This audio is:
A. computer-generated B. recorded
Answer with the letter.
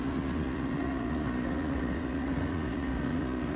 A